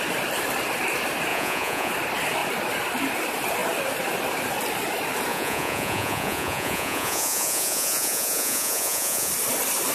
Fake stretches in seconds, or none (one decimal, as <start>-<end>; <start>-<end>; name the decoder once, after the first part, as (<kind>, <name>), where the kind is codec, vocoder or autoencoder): 1.3-1.9 (vocoder, Vocos); 5.3-9.3